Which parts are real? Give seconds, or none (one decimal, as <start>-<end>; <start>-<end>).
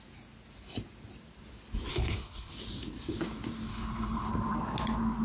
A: 0.0-1.9; 2.5-3.7; 4.3-5.2